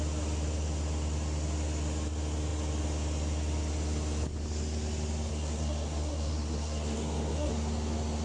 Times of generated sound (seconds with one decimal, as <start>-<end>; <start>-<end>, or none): 5.3-7.5